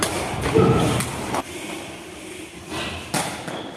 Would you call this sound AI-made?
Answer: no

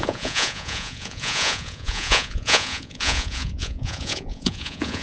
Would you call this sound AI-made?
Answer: yes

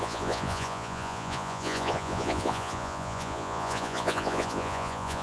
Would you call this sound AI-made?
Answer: yes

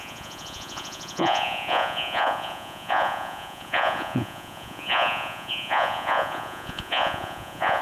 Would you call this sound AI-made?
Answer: yes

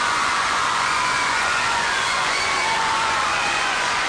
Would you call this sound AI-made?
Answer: yes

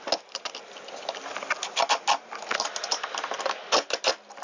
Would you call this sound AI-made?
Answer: no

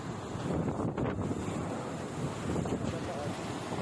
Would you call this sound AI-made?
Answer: no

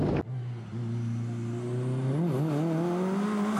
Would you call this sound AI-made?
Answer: no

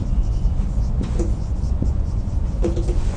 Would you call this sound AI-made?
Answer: yes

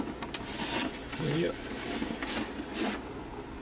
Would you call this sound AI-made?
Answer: no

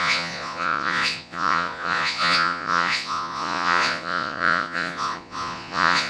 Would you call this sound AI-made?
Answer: yes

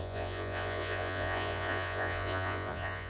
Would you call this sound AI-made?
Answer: yes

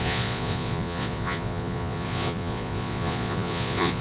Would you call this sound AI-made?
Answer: yes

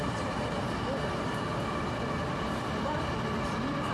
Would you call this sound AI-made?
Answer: no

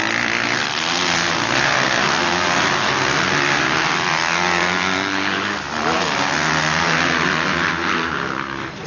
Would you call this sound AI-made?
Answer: no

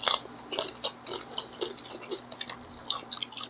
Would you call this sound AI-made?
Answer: no